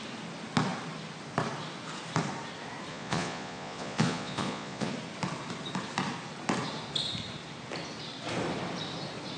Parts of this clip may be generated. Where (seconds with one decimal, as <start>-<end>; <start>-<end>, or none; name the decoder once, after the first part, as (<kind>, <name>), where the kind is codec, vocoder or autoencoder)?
2.9-4.9 (vocoder, Vocos)